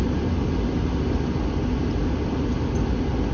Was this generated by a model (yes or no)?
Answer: no